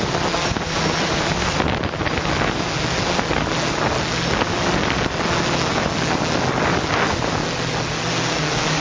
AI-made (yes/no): no